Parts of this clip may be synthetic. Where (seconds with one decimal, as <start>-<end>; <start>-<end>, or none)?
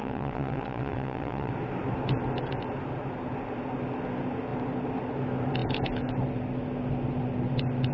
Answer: 0.0-1.5